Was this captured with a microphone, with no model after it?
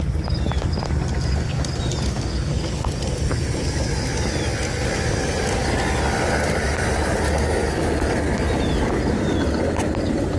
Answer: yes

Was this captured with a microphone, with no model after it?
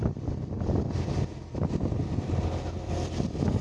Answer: yes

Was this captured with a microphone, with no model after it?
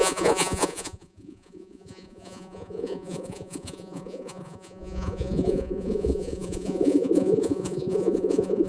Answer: no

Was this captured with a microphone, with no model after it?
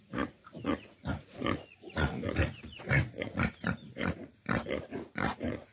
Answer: no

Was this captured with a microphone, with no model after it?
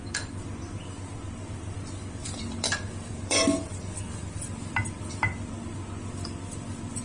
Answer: no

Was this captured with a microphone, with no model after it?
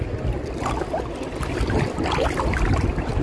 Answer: yes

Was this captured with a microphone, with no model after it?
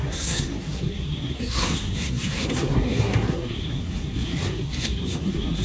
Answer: no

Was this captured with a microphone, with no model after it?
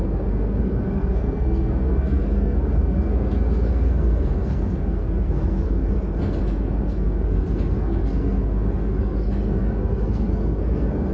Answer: no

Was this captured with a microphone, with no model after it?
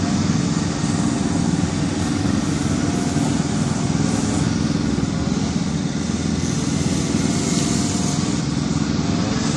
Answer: yes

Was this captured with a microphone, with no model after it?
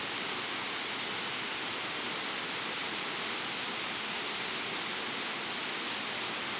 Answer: yes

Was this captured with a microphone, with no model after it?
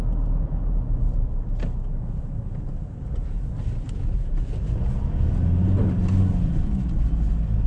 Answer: yes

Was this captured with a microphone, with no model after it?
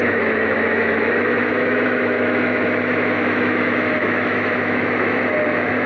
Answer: no